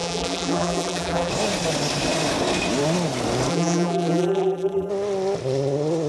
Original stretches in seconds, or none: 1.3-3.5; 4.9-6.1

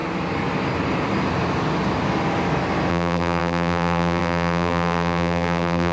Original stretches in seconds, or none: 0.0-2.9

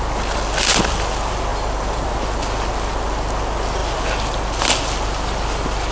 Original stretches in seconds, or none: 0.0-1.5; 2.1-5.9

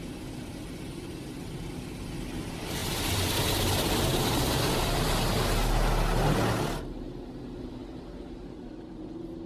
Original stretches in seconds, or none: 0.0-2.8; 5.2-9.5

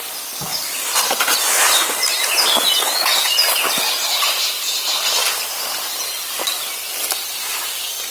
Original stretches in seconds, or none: 0.0-0.5; 2.0-8.1